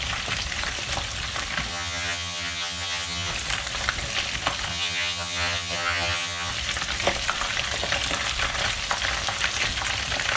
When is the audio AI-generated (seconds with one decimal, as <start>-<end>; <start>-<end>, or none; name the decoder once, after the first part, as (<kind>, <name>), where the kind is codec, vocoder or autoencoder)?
1.7-3.3 (vocoder, HiFi-GAN); 4.7-6.5